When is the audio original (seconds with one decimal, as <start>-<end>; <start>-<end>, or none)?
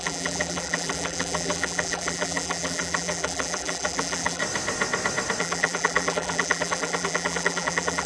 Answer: 4.4-5.4